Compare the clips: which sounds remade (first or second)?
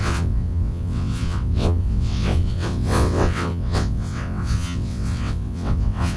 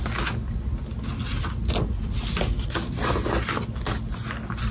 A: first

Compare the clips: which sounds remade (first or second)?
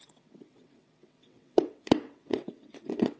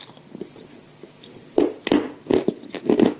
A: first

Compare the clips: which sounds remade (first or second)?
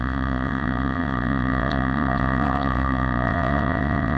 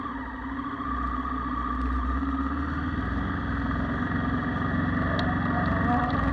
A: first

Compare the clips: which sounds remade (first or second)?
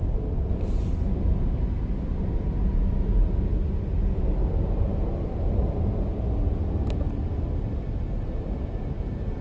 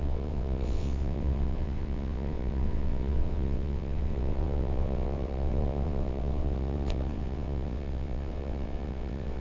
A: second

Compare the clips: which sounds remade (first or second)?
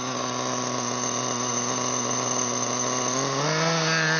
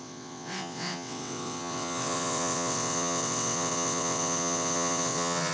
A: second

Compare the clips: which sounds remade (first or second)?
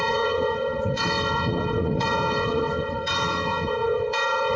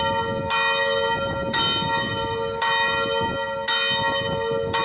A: first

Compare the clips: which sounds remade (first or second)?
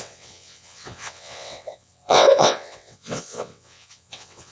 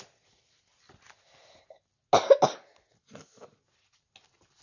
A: first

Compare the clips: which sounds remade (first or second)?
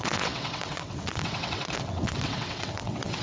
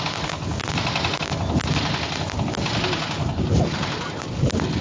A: first